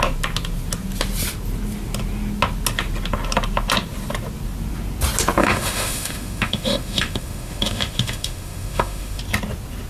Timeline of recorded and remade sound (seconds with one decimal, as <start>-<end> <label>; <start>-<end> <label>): 0.0-5.4 recorded; 5.4-9.2 remade; 9.2-9.9 recorded